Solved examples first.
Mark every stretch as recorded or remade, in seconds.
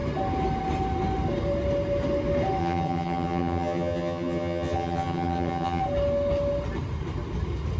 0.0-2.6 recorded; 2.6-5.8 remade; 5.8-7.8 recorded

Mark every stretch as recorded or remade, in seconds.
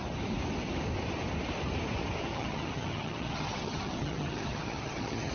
0.0-2.3 recorded; 2.3-5.3 remade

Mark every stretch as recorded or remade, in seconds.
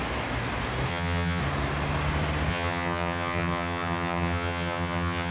0.0-0.9 recorded; 0.9-1.4 remade; 1.4-2.5 recorded; 2.5-5.3 remade